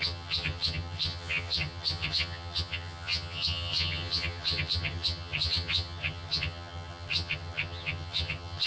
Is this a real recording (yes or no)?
no